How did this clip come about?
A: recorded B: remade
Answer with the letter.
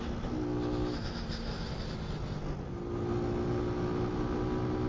A